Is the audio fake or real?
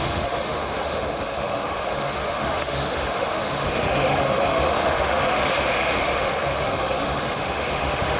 fake